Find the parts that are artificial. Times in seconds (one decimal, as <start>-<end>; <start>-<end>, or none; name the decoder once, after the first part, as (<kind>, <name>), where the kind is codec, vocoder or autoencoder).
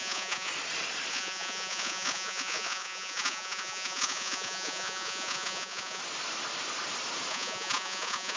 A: 0.0-0.5 (vocoder, Vocos); 1.1-6.0; 7.3-8.4